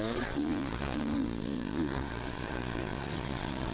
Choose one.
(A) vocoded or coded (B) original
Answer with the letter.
A